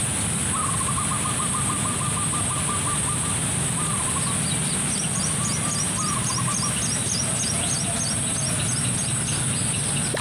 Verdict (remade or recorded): recorded